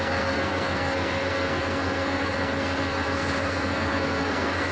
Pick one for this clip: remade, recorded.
remade